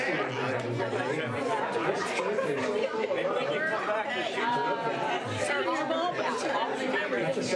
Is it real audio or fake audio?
real